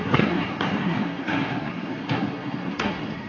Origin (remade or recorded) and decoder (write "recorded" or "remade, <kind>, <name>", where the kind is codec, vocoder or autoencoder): remade, codec, SNAC